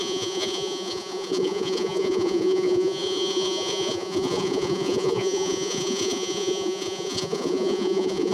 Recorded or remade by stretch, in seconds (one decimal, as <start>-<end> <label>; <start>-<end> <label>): 0.0-8.3 remade